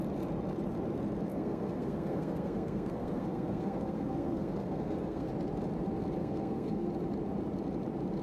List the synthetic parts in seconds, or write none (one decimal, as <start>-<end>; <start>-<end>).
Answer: 1.3-5.3; 6.2-6.9